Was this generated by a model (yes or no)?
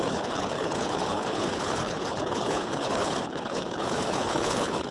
yes